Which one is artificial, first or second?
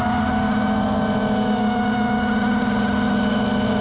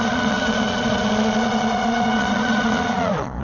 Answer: second